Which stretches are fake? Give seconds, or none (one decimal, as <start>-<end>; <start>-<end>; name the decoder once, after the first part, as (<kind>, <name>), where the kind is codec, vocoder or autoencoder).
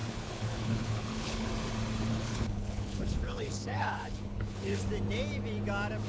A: 0.0-1.5 (codec, HILCodec); 2.1-4.8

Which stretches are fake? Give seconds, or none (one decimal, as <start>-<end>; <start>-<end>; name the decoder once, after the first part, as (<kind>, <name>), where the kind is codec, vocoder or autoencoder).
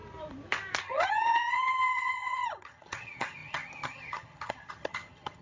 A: 0.8-5.4 (vocoder, HiFi-GAN)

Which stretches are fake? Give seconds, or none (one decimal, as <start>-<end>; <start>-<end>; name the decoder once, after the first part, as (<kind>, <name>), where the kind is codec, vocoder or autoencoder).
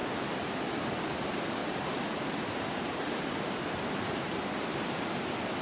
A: 1.6-5.0 (vocoder, BigVGAN v2)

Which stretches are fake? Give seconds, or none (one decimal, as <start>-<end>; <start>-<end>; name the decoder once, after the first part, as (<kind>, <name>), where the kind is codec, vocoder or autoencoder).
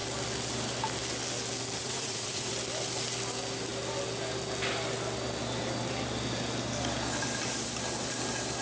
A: 1.8-2.5 (vocoder, Vocos)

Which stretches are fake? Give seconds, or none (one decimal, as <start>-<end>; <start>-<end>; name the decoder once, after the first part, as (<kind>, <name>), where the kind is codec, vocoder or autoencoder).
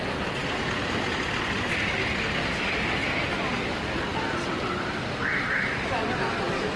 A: none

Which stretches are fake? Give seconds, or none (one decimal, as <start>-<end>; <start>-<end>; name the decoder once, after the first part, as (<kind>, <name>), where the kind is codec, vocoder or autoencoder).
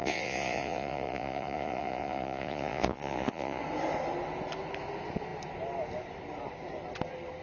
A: 0.0-3.6 (vocoder, Vocos)